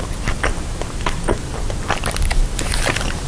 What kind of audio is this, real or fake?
real